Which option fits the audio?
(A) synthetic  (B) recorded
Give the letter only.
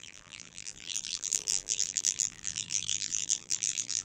A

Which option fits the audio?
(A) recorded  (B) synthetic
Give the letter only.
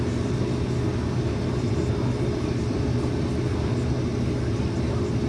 A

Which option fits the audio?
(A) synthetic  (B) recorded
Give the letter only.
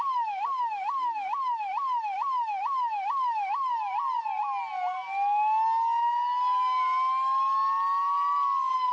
B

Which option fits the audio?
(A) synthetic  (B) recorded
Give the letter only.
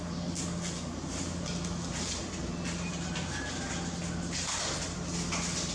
B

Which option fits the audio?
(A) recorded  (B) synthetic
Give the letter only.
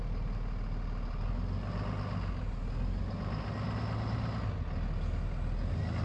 A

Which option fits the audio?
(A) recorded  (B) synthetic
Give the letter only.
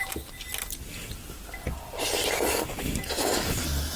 A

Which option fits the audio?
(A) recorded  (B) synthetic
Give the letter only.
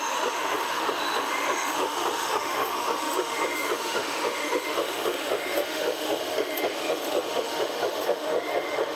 B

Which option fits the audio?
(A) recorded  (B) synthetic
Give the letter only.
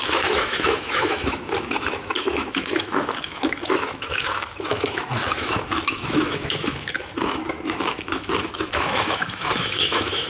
B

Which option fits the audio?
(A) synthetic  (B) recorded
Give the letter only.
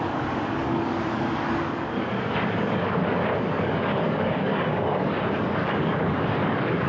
A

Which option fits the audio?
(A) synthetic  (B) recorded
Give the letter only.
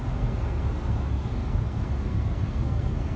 A